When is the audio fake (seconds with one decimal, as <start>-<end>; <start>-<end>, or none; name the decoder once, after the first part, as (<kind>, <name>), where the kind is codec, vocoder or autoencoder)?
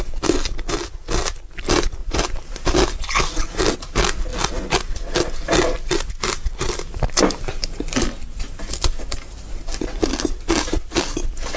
2.0-3.1 (vocoder, BigVGAN v2)